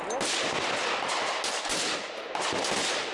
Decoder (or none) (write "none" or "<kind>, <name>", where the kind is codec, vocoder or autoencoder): none